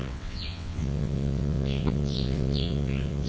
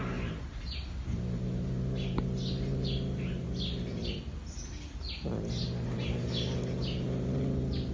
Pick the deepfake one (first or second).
first